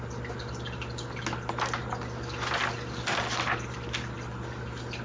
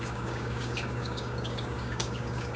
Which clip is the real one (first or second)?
first